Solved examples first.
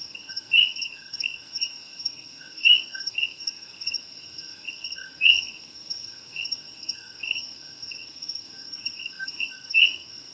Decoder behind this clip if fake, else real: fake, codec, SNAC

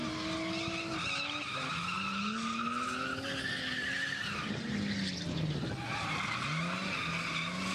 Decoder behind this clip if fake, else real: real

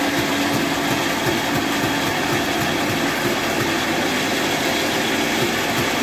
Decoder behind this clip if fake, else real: real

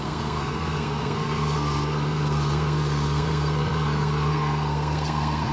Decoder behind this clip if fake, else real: fake, codec, SNAC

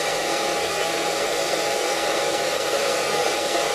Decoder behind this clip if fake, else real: fake, codec, SNAC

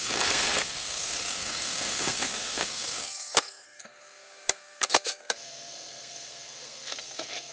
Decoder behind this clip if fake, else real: fake, codec, SNAC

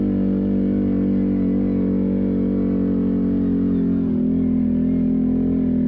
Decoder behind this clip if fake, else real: real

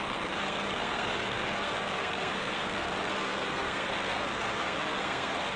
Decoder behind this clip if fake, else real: fake, codec, SNAC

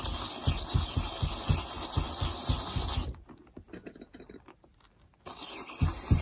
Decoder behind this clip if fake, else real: real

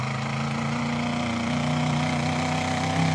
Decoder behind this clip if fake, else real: real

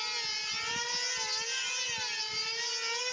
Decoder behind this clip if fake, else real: real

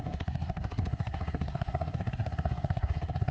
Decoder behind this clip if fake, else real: fake, codec, SNAC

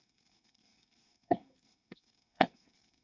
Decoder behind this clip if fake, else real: fake, codec, SNAC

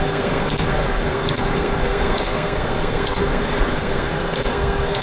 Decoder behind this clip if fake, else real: fake, codec, SNAC